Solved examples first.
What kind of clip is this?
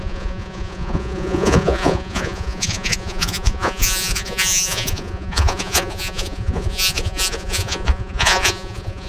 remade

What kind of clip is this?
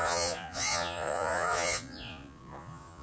remade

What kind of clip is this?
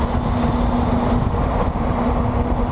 recorded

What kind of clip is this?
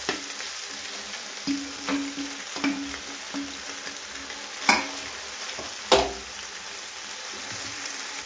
recorded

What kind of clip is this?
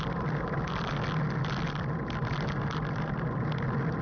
recorded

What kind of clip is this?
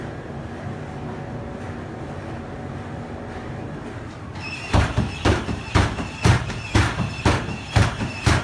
remade